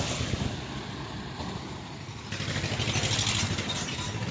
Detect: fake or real real